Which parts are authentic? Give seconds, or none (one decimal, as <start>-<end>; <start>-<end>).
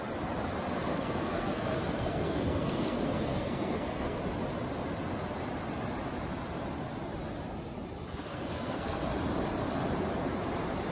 0.0-0.9; 4.2-8.3; 9.0-10.9